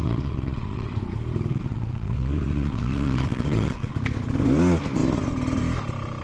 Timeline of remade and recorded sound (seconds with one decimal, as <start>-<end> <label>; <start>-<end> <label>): 0.0-0.9 remade; 0.9-1.5 recorded; 1.5-3.9 remade; 3.9-6.2 recorded